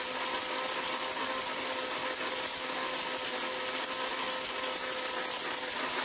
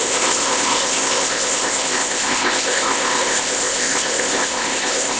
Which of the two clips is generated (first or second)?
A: second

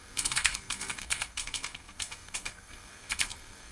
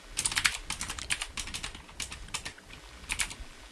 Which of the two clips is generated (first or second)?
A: first